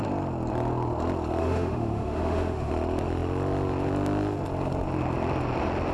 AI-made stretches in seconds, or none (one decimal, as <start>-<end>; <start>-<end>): 1.4-2.7

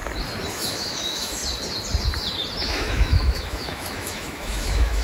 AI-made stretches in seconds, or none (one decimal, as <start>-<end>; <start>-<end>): 0.5-1.4; 2.6-5.0

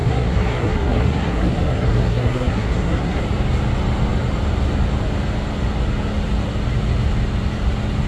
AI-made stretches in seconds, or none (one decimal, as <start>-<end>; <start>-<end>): 0.0-3.2

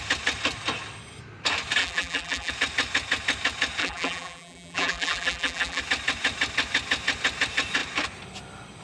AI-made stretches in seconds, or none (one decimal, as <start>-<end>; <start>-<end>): 1.8-2.5; 3.8-5.8

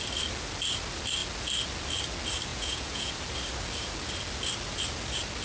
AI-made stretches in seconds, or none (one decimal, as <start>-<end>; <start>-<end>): 2.5-3.1

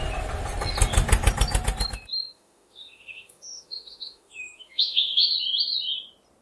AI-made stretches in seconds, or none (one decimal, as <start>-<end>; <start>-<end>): 2.2-5.3

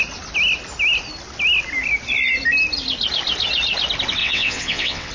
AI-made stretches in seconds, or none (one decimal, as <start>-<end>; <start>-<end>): 4.2-5.1

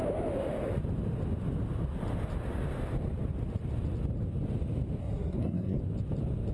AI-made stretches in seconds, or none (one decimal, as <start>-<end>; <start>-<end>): 5.0-5.8